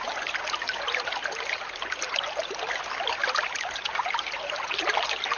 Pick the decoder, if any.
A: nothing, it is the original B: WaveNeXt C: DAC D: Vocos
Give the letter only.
A